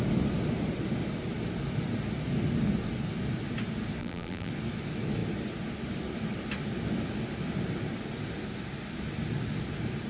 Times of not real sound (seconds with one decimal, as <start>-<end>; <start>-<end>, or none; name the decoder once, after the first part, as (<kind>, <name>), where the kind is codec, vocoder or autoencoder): 4.0-4.5 (vocoder, BigVGAN v2)